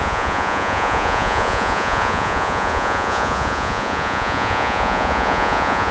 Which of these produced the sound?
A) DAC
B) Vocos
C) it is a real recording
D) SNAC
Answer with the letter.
B